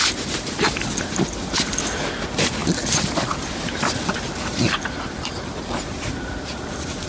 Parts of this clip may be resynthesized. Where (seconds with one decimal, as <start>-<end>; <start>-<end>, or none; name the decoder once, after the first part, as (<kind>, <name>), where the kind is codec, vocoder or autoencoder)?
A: none